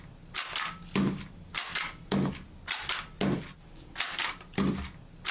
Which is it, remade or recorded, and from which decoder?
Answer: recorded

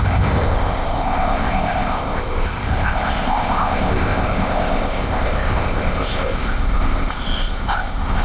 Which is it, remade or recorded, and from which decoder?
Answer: remade, codec, ZipCodec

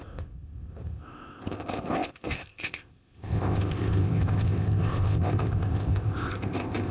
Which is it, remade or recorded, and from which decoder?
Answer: remade, codec, ZipCodec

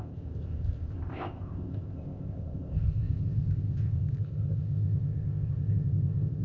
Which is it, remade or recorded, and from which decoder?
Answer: remade, codec, ZipCodec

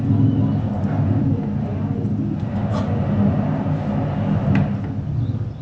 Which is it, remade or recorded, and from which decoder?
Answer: recorded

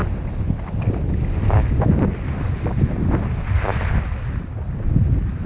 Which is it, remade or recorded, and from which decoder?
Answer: recorded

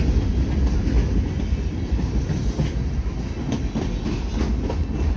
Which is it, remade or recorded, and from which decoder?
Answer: recorded